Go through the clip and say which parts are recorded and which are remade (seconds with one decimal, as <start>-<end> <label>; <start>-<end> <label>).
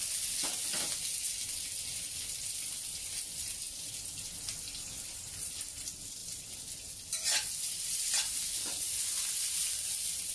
0.0-10.3 recorded